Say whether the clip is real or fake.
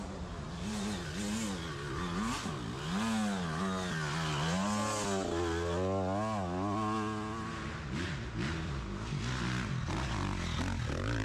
real